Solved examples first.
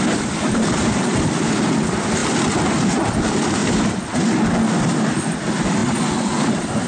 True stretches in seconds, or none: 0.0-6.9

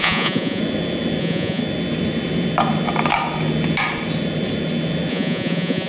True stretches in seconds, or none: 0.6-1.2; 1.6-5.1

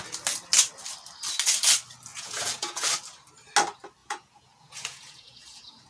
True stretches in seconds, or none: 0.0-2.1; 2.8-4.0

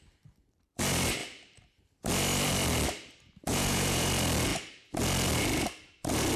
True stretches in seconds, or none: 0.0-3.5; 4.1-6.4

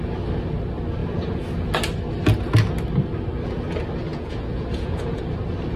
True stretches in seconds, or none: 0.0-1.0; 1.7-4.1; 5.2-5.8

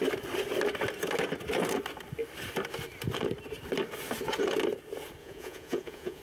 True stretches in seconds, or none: 0.0-5.2

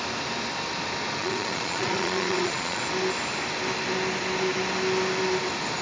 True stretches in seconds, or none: 0.0-1.2; 2.8-5.8

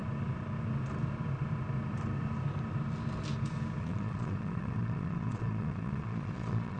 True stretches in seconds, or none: 0.0-3.8